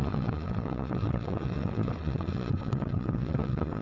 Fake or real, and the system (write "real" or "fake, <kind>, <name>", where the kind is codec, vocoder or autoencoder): fake, vocoder, WaveNeXt